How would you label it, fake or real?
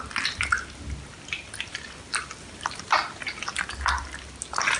real